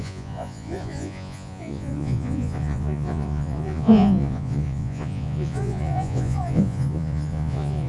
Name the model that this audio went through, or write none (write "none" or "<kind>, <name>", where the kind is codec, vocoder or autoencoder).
vocoder, Vocos